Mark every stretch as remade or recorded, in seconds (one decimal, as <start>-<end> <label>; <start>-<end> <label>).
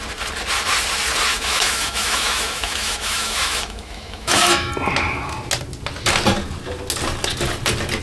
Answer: 0.0-1.3 recorded; 1.3-4.7 remade; 4.7-8.0 recorded